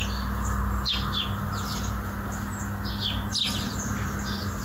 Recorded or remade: recorded